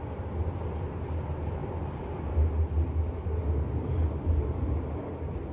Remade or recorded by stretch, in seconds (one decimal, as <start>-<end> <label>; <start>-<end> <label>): 0.0-5.5 recorded